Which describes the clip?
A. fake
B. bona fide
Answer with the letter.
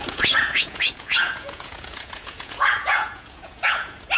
A